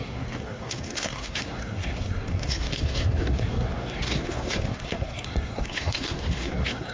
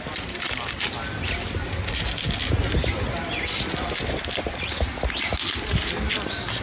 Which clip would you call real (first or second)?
second